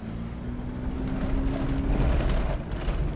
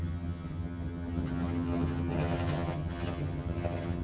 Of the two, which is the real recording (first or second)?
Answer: first